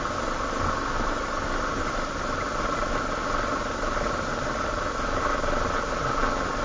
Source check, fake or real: real